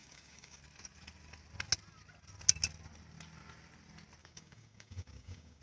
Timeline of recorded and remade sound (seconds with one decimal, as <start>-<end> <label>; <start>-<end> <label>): 0.0-0.6 remade; 0.6-4.2 recorded; 4.2-5.6 remade